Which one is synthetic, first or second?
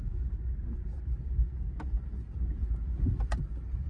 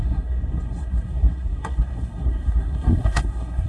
second